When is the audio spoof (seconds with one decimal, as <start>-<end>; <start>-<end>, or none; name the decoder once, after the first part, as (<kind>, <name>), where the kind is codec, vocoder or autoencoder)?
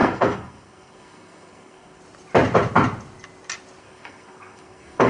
0.0-2.0 (codec, SNAC); 3.8-5.1